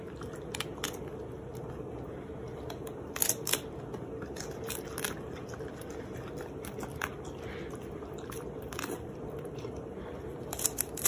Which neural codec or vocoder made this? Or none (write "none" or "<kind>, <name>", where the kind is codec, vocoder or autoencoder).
none